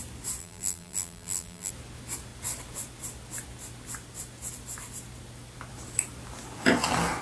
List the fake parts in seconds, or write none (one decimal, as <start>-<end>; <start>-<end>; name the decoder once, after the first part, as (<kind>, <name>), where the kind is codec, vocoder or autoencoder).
0.4-1.7 (vocoder, BigVGAN v2)